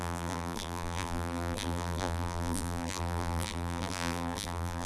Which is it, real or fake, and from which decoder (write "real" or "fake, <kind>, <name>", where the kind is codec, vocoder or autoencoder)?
fake, vocoder, BigVGAN v2